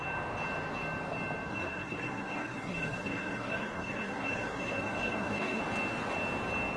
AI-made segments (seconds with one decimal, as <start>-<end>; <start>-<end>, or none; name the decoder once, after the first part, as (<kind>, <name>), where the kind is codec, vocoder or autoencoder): 1.5-5.6 (codec, SNAC)